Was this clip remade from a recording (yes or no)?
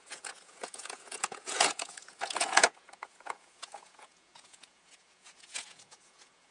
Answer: yes